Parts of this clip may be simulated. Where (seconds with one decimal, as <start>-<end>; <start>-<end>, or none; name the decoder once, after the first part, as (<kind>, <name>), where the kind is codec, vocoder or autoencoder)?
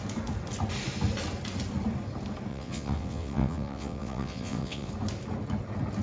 2.5-4.9 (vocoder, WaveNeXt)